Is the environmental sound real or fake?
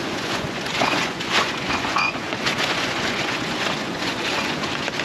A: fake